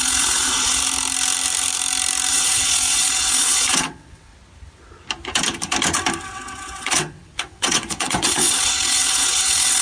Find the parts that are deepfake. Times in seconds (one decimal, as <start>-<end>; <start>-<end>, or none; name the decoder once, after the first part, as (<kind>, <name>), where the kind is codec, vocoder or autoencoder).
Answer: 0.0-0.8 (vocoder, WaveNeXt); 2.3-4.3; 6.3-9.8